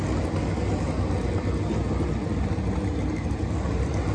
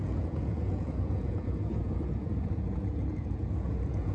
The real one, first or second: first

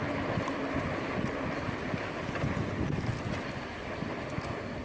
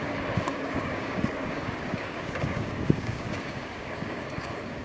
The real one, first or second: first